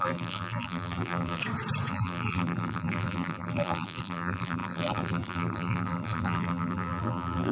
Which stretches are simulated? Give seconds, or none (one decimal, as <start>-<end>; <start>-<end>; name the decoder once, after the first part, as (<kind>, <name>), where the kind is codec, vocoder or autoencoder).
0.0-1.4 (vocoder, BigVGAN v2); 1.9-7.5